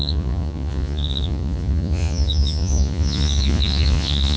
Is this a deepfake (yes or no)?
yes